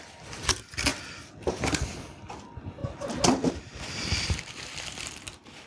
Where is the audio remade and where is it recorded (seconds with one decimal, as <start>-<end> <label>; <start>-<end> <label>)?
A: 0.0-5.7 recorded